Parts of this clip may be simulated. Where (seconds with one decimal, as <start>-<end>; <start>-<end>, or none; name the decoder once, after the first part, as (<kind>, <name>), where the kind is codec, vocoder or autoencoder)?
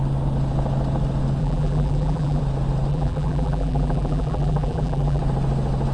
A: 1.4-2.4 (vocoder, BigVGAN v2); 2.9-5.2